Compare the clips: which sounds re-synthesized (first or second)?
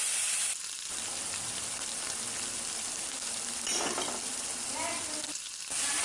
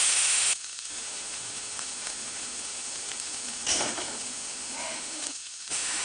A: second